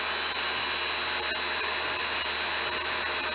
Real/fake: real